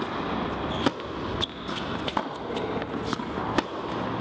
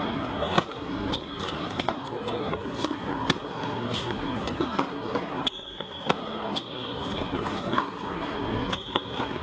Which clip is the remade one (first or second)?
second